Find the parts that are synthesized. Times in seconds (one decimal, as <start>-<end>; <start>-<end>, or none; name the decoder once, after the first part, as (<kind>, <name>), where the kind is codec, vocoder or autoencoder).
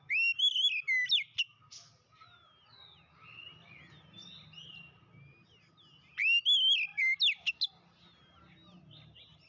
none